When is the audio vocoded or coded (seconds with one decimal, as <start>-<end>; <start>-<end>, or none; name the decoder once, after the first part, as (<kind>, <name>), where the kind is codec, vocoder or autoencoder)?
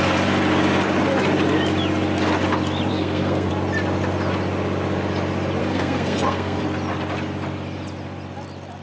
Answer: 2.9-3.5 (codec, SNAC); 5.6-6.6